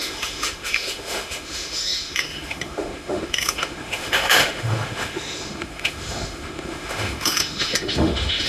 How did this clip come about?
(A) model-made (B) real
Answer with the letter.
A